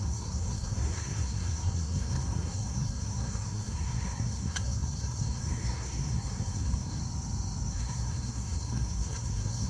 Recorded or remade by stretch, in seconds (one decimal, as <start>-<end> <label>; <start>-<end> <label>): 0.0-7.0 remade; 7.0-7.7 recorded; 7.7-9.7 remade